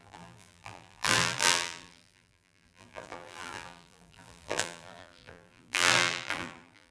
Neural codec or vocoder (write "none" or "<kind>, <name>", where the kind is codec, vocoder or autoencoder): vocoder, BigVGAN v2